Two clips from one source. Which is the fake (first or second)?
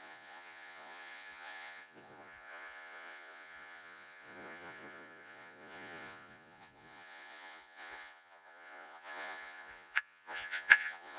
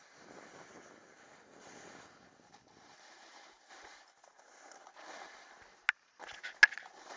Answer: first